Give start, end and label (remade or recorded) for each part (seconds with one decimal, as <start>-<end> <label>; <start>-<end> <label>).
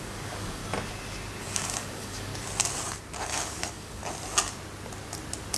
0.0-0.6 remade; 0.6-1.4 recorded; 1.4-2.3 remade; 2.3-3.3 recorded; 3.3-4.0 remade; 4.0-5.6 recorded